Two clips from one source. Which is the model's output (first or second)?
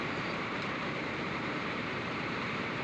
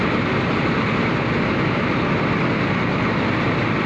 first